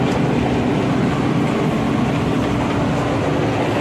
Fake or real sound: real